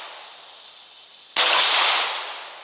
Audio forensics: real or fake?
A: real